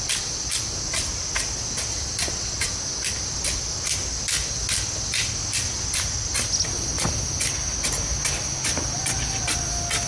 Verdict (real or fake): real